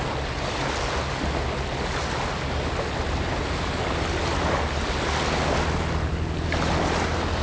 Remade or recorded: recorded